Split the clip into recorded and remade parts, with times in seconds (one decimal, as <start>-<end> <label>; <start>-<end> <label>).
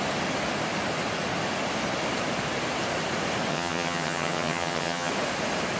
0.0-3.5 recorded; 3.5-5.1 remade; 5.1-5.8 recorded